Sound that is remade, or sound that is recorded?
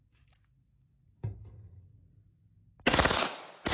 recorded